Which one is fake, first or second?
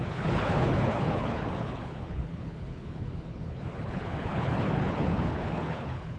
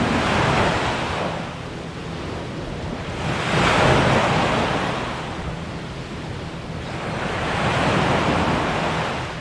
first